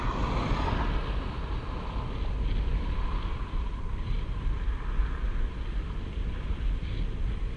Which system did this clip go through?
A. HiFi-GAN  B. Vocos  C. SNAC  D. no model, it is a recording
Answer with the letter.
D